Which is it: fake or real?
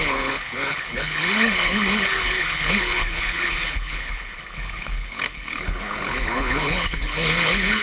fake